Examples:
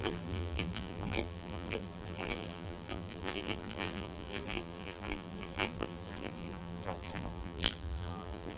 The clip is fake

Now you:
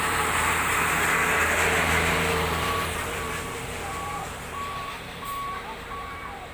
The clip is fake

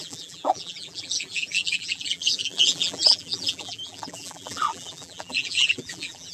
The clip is fake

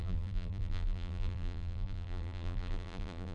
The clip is fake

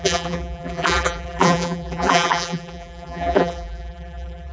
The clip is fake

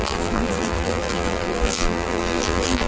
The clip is fake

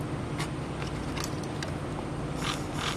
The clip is real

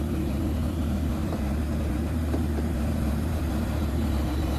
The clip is fake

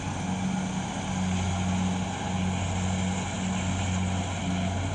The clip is real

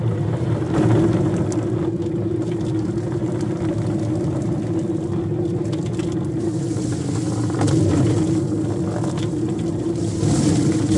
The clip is real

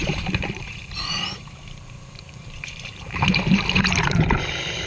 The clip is fake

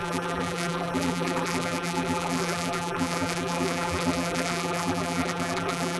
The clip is fake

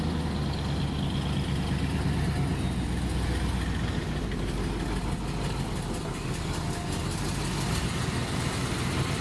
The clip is real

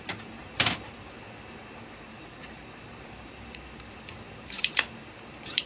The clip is fake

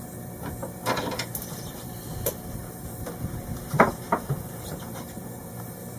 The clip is fake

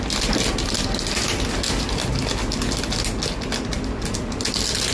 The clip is real